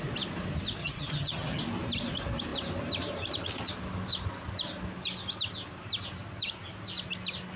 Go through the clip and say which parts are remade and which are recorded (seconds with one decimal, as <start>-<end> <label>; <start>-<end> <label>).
0.0-0.8 recorded; 0.8-1.6 remade; 1.6-7.6 recorded